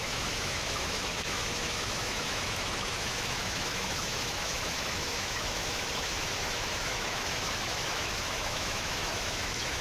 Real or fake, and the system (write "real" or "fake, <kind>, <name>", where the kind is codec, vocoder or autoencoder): fake, autoencoder, DAC-VAE